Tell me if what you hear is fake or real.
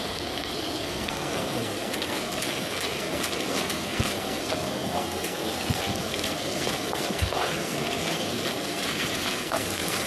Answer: fake